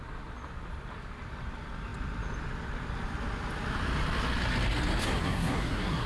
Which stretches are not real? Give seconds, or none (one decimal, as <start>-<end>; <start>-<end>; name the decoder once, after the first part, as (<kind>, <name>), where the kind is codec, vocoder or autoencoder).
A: 5.0-6.1 (codec, SNAC)